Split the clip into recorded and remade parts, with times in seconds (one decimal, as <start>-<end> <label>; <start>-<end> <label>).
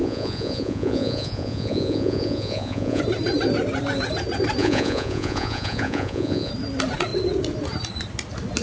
0.0-3.0 remade; 3.0-4.6 recorded; 4.6-6.5 remade; 6.5-8.6 recorded